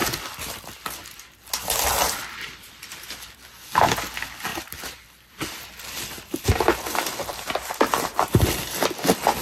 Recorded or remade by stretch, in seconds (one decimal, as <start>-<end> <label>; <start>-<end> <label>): 0.0-1.9 recorded; 1.9-3.9 remade; 3.9-4.5 recorded; 4.5-5.6 remade; 5.6-7.3 recorded; 7.3-8.8 remade; 8.8-9.4 recorded